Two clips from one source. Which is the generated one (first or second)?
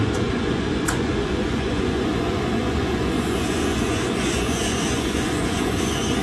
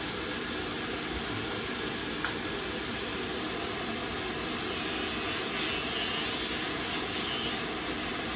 first